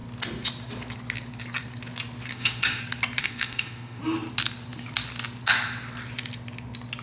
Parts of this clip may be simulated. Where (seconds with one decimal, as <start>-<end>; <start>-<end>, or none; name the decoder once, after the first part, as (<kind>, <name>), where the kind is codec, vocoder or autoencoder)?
2.3-2.8 (autoencoder, DAC-VAE); 3.2-4.0